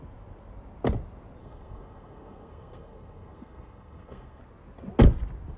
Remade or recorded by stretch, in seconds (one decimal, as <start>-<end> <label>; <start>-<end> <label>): 0.0-1.4 recorded; 1.4-4.4 remade; 4.4-5.6 recorded